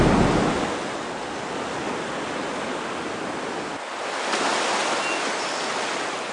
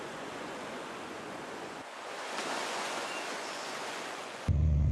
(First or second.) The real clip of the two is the first